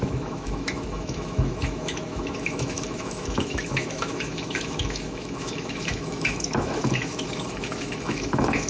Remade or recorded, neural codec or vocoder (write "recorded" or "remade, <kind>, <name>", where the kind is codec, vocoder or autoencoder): remade, autoencoder, DAC-VAE